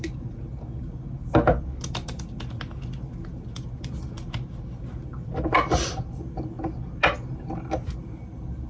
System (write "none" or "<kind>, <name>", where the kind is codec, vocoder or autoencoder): none